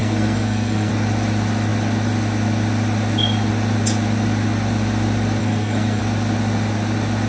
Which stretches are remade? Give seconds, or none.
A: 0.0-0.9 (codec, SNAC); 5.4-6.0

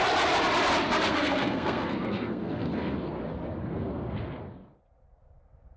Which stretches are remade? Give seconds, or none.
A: 1.1-3.2 (codec, SNAC); 3.6-4.2

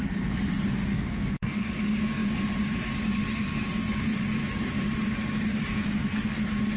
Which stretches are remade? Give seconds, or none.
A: 0.9-1.7 (codec, SNAC); 5.7-6.3

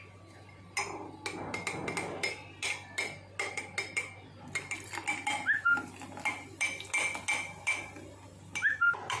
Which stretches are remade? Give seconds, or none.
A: none

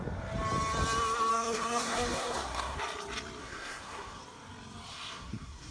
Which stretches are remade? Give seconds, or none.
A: 1.3-2.8 (codec, SNAC); 3.4-4.2; 4.9-5.7